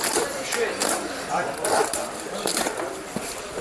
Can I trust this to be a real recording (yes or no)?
yes